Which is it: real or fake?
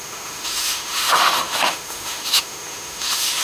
fake